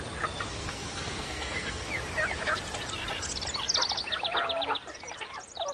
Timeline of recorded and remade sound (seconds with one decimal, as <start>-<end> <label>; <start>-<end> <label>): 0.0-0.5 recorded; 0.5-1.9 remade; 1.9-5.7 recorded